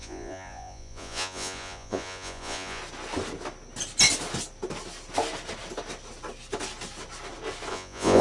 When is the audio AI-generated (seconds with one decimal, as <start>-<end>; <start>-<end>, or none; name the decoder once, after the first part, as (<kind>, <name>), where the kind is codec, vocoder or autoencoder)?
0.0-2.8 (vocoder, Vocos); 7.7-8.2